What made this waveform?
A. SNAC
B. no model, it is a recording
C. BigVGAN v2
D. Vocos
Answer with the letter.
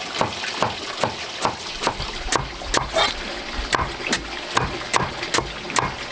B